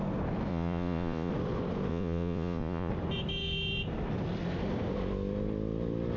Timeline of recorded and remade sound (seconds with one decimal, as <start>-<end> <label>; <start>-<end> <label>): 0.0-0.5 recorded; 0.5-1.3 remade; 1.3-1.9 recorded; 1.9-2.9 remade; 2.9-6.2 recorded